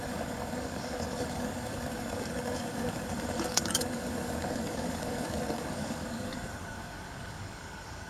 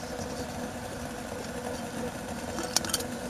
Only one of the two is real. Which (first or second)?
second